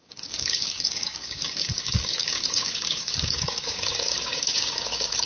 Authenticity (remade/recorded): remade